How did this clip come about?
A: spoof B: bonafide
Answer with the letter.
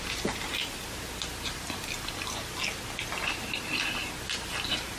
B